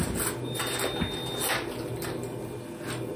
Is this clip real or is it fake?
real